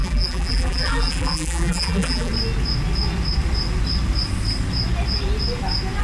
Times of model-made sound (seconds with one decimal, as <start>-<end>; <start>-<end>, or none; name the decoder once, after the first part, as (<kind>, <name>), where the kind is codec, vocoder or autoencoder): 0.0-2.3 (vocoder, BigVGAN v2)

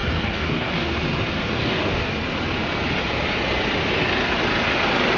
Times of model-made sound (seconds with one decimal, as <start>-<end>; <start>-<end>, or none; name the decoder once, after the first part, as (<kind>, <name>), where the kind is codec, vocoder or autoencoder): 0.0-0.9 (codec, DAC); 1.6-2.1

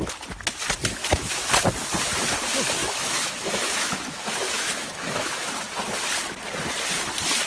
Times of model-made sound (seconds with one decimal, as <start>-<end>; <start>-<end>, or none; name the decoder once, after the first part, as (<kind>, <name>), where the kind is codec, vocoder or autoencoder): 1.0-1.5 (autoencoder, DAC-VAE); 2.8-5.5

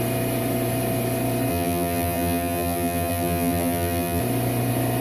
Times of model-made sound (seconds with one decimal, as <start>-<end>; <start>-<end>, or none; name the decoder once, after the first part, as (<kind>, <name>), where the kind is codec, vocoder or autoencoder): 1.5-4.2 (vocoder, BigVGAN v2)

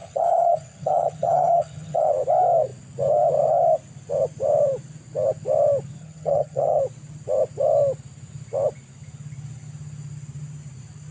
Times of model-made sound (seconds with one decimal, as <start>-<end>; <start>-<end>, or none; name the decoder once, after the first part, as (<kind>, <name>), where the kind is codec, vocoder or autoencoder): 0.0-2.1 (vocoder, HiFi-GAN); 6.0-6.8

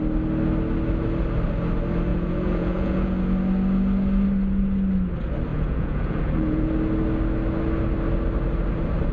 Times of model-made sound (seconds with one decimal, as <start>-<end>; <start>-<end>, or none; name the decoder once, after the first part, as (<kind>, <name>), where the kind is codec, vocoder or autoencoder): 2.1-3.2 (vocoder, Vocos); 5.5-6.7